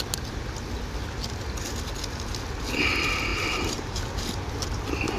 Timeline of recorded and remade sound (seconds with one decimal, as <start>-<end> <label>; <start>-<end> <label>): 0.0-3.3 recorded; 3.3-4.0 remade; 4.0-5.2 recorded